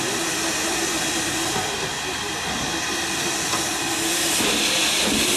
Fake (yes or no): no